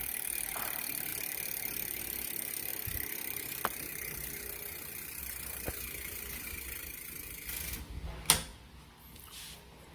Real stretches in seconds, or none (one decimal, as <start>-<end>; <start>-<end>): 0.0-9.9